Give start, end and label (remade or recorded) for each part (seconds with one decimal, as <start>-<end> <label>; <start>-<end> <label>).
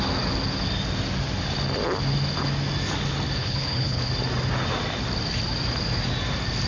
0.0-3.4 recorded; 3.4-4.1 remade; 4.1-6.7 recorded